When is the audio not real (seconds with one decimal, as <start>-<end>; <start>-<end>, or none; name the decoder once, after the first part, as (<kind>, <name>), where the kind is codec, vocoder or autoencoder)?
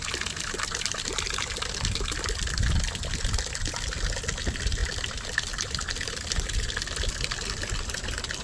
4.8-7.1 (vocoder, BigVGAN v2)